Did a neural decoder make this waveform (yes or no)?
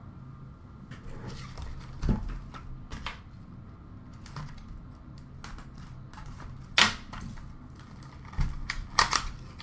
no